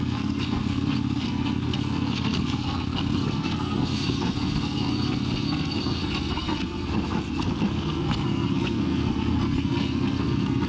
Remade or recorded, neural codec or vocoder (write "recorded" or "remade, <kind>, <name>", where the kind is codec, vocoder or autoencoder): remade, codec, SNAC